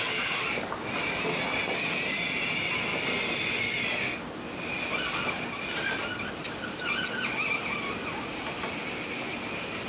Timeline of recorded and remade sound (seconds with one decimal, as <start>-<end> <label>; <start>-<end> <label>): 0.0-8.0 recorded; 8.0-8.5 remade; 8.5-9.9 recorded